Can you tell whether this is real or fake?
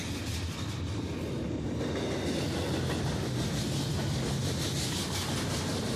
real